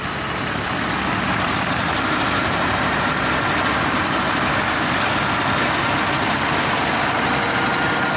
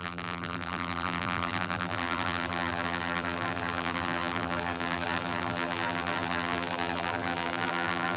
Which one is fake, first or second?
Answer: second